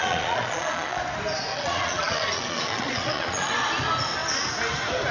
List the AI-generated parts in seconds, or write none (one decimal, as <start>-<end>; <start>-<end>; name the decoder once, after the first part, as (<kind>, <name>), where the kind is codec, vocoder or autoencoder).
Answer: 0.0-1.0 (vocoder, Vocos); 1.5-3.5